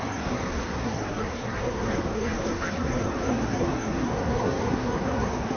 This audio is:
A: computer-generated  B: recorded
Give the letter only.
A